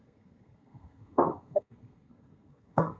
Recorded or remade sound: remade